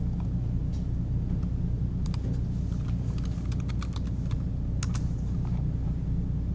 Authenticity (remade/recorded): recorded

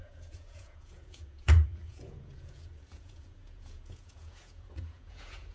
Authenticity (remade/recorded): remade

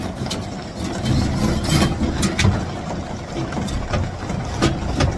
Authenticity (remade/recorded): recorded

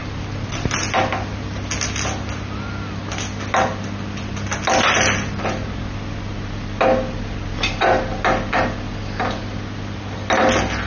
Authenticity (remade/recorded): recorded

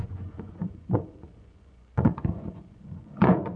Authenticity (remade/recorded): remade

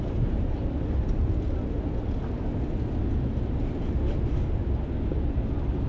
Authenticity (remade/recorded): recorded